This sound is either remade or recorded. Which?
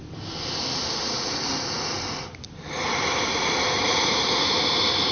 recorded